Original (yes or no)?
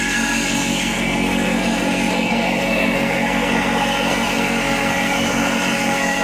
no